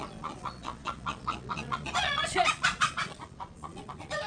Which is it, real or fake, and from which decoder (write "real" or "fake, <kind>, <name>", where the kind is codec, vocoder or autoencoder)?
fake, vocoder, Vocos